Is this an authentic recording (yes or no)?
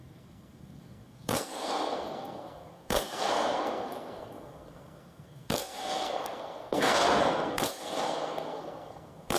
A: no